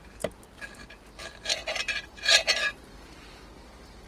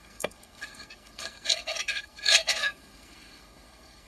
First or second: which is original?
first